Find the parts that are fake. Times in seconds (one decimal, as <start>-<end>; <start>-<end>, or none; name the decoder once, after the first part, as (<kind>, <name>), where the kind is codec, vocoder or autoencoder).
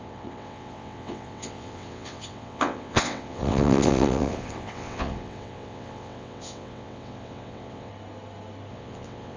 0.0-7.9 (vocoder, WaveNeXt); 8.7-9.4